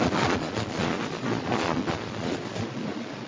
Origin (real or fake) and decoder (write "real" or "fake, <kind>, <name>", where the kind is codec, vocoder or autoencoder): fake, vocoder, Vocos